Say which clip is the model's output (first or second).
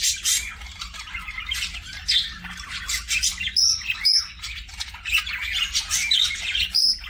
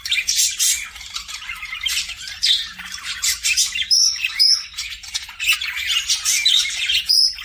second